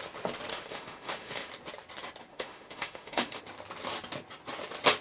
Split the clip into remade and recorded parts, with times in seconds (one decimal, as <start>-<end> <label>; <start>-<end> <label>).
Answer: 0.0-0.5 recorded; 0.5-1.5 remade; 1.5-2.3 recorded; 2.3-3.4 remade; 3.4-5.0 recorded